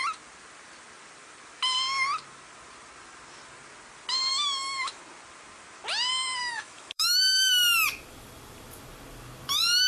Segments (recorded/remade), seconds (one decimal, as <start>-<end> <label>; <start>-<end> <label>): 0.0-4.3 recorded; 4.3-5.0 remade; 5.0-6.4 recorded; 6.4-7.5 remade; 7.5-9.9 recorded